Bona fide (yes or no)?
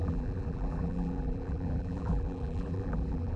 no